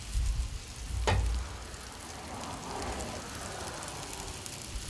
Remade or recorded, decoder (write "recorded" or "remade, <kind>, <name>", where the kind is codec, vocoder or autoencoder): recorded